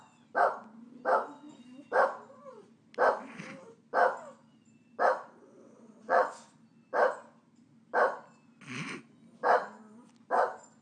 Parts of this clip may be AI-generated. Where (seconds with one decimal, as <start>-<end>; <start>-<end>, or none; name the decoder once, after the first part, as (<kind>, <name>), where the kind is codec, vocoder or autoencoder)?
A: 5.4-6.3 (vocoder, WaveNeXt)